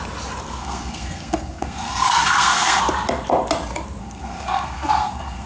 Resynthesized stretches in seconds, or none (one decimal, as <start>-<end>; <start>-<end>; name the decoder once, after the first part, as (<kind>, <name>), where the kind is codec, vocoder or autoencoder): 0.6-2.8 (codec, SNAC); 4.0-5.5